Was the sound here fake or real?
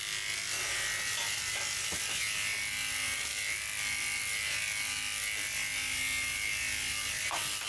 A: real